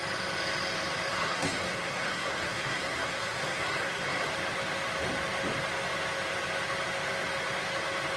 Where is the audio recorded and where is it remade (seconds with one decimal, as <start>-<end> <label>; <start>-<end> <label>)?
0.0-1.1 recorded; 1.1-4.3 remade; 4.3-8.2 recorded